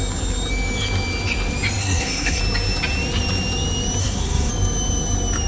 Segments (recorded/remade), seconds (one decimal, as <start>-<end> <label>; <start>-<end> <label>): 0.0-1.8 recorded; 1.8-2.4 remade; 2.4-4.0 recorded; 4.0-4.5 remade; 4.5-5.5 recorded